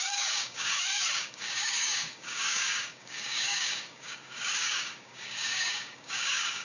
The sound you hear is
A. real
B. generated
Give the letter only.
B